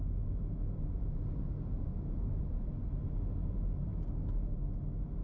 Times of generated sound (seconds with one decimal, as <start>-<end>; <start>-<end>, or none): none